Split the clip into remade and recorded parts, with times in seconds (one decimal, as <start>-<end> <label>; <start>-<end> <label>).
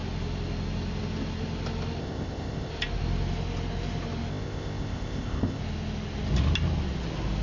0.0-2.0 recorded; 2.0-2.7 remade; 2.7-4.3 recorded; 4.3-5.6 remade; 5.6-7.4 recorded